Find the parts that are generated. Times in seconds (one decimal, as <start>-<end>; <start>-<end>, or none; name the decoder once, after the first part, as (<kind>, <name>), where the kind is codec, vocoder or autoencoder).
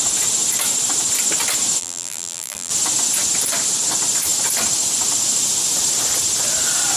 1.8-2.7 (vocoder, BigVGAN v2)